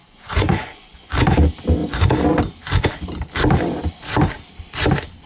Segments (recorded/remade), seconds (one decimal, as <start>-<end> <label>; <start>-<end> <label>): 0.0-1.1 remade; 1.1-5.3 recorded